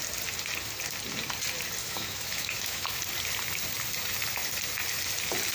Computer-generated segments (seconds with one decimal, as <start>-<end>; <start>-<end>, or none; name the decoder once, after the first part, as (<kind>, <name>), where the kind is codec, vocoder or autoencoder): 1.8-3.0 (autoencoder, DAC-VAE)